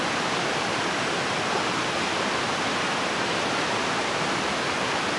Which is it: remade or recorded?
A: recorded